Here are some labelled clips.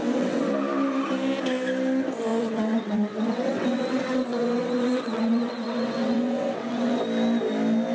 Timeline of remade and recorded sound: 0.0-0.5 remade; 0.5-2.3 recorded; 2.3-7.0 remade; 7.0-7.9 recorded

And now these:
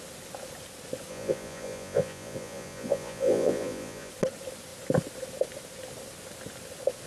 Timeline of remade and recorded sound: 0.0-1.1 recorded; 1.1-4.1 remade; 4.1-7.1 recorded

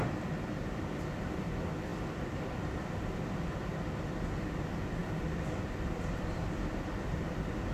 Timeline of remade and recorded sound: 0.0-1.9 recorded; 1.9-3.8 remade; 3.8-5.0 recorded; 5.0-5.7 remade; 5.7-7.7 recorded